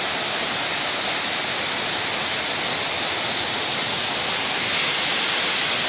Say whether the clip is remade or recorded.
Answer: recorded